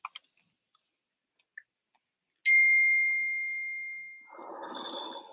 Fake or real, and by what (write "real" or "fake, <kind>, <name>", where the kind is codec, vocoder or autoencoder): real